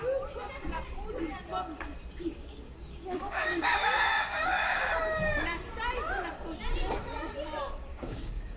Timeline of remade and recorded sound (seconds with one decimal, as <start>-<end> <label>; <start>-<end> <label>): 0.0-2.3 recorded; 2.3-5.0 remade; 5.0-7.9 recorded; 7.9-8.6 remade